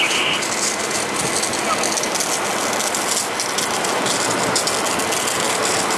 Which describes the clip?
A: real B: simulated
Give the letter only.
A